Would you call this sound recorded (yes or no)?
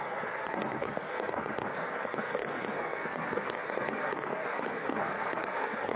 no